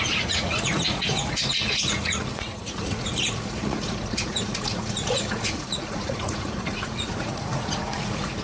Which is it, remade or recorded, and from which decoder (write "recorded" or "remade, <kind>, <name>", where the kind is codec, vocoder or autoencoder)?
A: remade, vocoder, Vocos